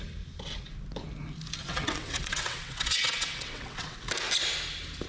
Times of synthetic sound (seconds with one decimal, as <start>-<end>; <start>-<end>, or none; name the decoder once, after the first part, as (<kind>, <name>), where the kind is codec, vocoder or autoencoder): 1.6-4.0 (vocoder, WaveNeXt)